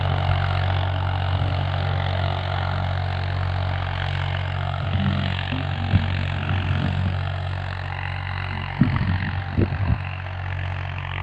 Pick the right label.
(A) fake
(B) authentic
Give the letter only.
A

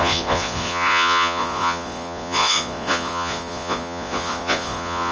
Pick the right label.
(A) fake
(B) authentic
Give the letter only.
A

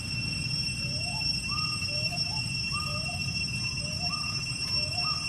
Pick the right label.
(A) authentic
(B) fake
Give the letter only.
B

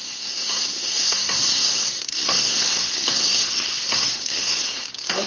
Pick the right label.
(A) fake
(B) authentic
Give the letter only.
A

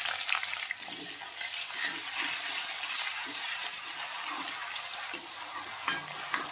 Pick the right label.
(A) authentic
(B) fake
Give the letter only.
A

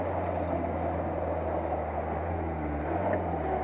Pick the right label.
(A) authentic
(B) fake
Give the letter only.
A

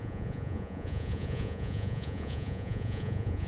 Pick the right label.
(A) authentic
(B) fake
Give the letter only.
B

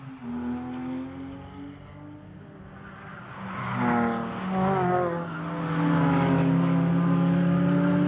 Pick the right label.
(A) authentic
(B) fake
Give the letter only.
A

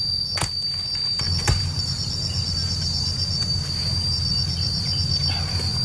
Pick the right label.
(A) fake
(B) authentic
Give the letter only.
B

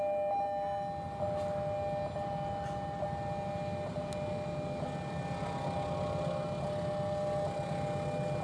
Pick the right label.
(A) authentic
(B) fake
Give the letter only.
A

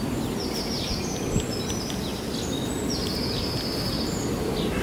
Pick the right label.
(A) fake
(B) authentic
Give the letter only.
B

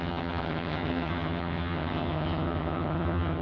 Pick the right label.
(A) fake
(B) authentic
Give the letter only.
A